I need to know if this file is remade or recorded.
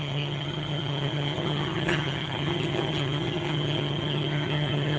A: remade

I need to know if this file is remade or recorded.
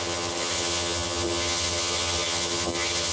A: remade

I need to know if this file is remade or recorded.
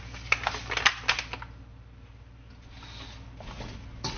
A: recorded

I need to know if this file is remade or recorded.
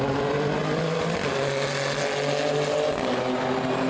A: recorded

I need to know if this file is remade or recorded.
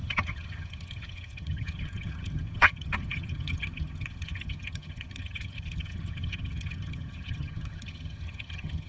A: remade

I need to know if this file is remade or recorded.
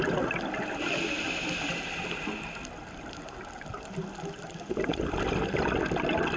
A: recorded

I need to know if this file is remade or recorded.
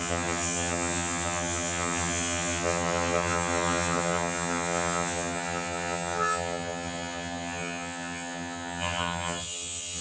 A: remade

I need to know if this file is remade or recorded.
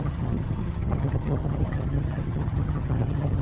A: remade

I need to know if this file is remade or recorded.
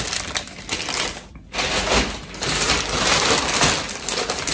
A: recorded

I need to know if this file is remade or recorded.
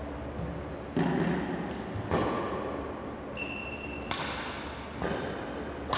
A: recorded